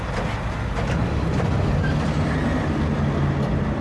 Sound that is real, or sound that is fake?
real